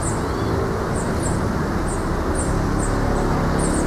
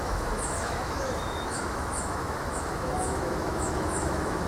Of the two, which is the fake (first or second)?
second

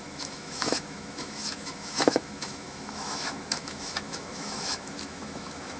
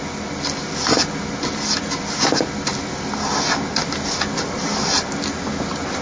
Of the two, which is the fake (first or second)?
first